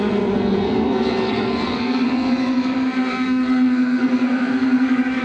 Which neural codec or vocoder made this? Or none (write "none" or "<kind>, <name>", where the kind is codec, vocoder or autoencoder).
codec, SNAC